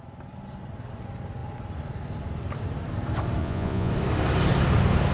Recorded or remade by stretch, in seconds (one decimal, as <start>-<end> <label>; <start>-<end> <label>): 0.0-3.4 recorded; 3.4-3.9 remade; 3.9-5.1 recorded